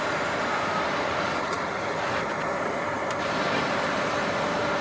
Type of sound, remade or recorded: remade